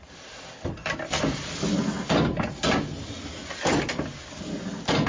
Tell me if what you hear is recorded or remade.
recorded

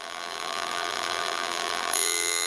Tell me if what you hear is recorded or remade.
remade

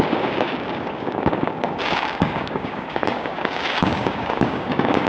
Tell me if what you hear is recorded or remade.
remade